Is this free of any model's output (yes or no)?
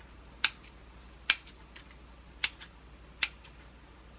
yes